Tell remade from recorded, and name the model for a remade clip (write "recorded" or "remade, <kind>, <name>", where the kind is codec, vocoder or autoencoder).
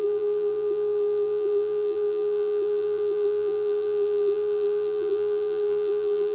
remade, vocoder, BigVGAN v2